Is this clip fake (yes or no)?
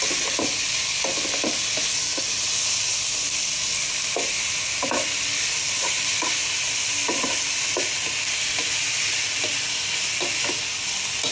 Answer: no